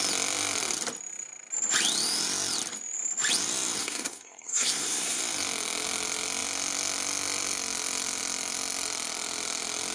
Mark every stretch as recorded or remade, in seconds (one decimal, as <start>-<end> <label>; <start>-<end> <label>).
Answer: 0.0-3.8 recorded; 3.8-5.2 remade; 5.2-9.9 recorded